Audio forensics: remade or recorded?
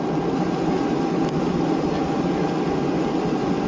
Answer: recorded